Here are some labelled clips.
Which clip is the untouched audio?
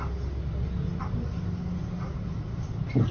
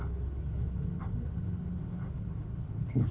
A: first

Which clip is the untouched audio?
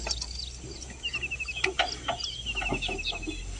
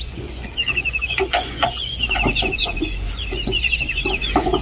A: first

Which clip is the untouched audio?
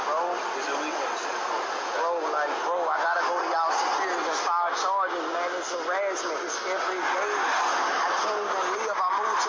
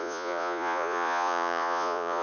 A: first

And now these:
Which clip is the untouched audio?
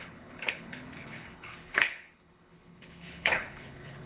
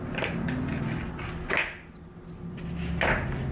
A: second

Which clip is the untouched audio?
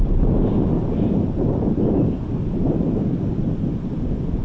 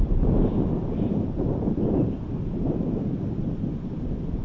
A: first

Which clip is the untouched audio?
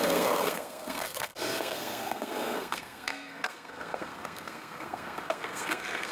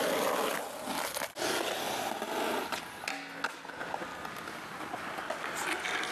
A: second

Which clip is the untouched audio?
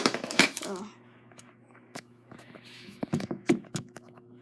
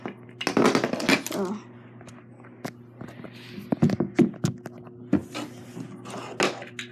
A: second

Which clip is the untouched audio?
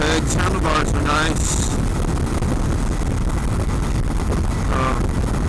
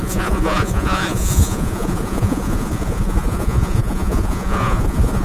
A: first